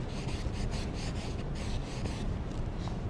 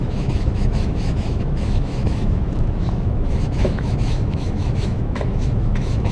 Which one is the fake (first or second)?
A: second